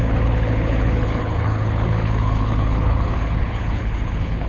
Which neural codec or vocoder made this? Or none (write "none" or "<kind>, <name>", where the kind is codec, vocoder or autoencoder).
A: codec, HILCodec